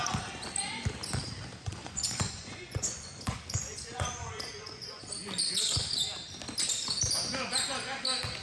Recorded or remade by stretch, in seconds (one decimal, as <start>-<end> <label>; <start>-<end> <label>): 0.0-1.5 recorded; 1.5-5.1 remade; 5.1-8.4 recorded